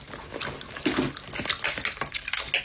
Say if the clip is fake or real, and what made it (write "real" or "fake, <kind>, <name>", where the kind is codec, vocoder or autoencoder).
real